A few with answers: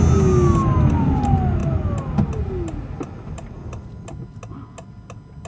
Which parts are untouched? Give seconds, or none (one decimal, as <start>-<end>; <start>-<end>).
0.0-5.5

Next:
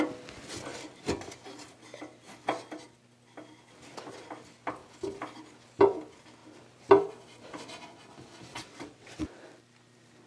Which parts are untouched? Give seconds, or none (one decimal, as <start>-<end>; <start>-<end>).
0.0-8.5; 9.4-10.3

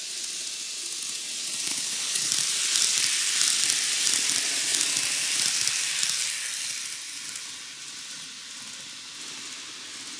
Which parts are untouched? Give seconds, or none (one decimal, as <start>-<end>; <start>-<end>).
0.0-1.7; 2.3-10.2

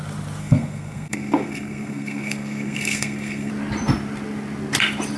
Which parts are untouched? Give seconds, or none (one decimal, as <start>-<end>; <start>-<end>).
0.0-0.4; 3.5-5.2